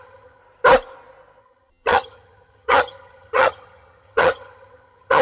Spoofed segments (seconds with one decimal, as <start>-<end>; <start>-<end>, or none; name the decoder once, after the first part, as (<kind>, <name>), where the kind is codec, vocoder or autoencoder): 0.0-0.4 (vocoder, HiFi-GAN); 1.4-5.2